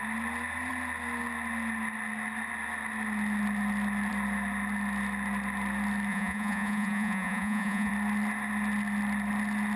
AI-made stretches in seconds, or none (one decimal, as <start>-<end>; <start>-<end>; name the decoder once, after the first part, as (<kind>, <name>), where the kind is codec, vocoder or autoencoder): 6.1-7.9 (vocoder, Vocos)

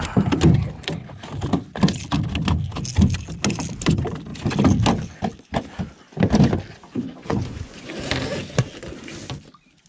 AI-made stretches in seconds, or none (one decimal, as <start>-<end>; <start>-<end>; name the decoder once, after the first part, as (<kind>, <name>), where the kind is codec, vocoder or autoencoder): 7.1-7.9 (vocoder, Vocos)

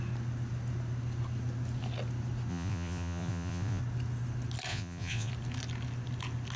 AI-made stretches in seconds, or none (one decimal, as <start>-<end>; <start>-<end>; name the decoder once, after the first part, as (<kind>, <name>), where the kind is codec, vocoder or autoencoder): 2.5-3.8 (vocoder, Vocos); 4.7-5.3